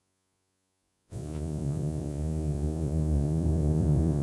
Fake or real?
fake